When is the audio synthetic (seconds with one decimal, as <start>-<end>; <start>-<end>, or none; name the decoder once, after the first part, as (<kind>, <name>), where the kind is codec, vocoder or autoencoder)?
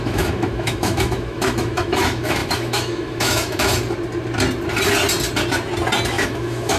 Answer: 0.0-3.7 (autoencoder, DAC-VAE); 6.1-6.8